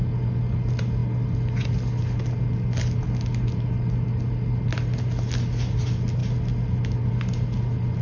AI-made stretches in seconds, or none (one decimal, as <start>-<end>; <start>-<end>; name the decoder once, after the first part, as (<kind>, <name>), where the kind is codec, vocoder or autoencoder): none